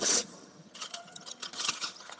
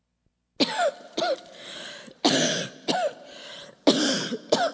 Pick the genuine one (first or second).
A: second